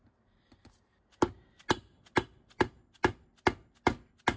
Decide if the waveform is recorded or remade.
recorded